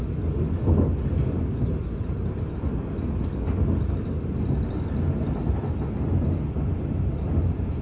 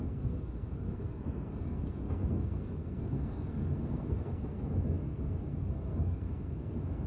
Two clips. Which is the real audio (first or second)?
first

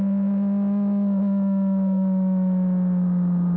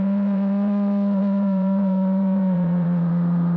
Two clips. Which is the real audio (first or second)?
first